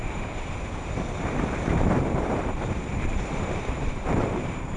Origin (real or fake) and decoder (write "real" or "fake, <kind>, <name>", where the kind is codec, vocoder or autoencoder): fake, vocoder, BigVGAN v2